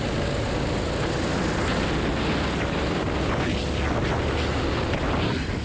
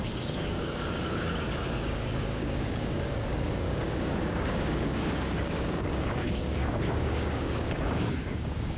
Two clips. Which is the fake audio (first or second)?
second